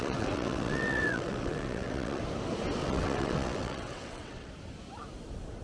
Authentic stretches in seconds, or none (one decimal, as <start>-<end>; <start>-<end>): 2.2-2.8; 4.5-5.6